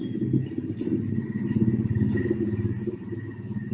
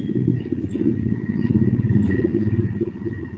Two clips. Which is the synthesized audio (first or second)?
second